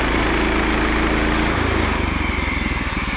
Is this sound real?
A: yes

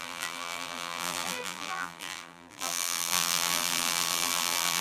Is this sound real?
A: no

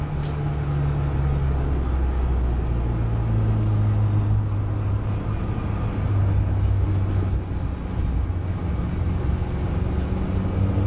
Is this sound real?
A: yes